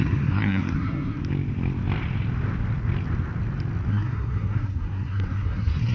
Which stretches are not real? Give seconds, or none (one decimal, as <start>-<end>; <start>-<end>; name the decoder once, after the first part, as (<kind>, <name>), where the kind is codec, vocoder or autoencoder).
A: 0.0-1.2 (codec, SNAC); 3.9-5.9